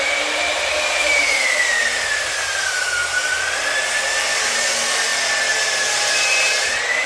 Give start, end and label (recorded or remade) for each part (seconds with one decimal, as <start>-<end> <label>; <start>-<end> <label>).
0.0-3.0 remade; 3.0-4.0 recorded; 4.0-5.1 remade; 5.1-5.7 recorded; 5.7-7.1 remade